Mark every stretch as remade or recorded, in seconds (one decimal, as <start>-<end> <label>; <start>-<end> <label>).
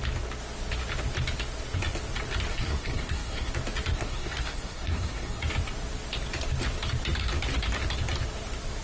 0.0-2.5 recorded; 2.5-3.5 remade; 3.5-3.9 recorded; 3.9-5.4 remade; 5.4-8.8 recorded